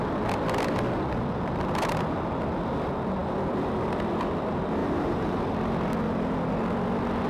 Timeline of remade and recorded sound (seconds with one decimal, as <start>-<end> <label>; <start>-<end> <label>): 0.0-4.8 recorded; 4.8-5.4 remade; 5.4-7.3 recorded